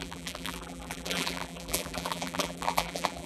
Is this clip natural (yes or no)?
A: no